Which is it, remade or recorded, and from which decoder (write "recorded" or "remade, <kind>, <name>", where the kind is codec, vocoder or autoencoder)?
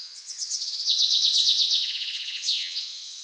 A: remade, vocoder, WaveNeXt